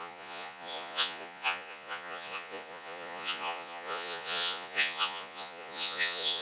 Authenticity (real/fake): fake